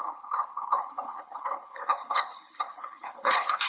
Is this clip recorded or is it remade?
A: remade